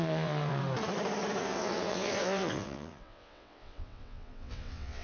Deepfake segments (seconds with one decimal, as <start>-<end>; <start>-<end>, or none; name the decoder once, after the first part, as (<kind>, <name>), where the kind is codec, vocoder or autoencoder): 0.0-0.6 (vocoder, WaveNeXt); 1.4-5.0